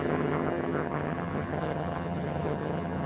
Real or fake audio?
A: fake